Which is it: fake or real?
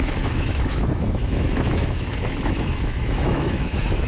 fake